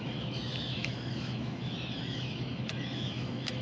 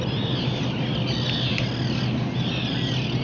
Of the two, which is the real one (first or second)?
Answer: second